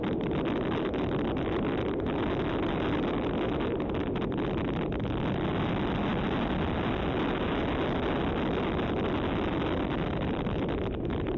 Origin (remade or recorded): recorded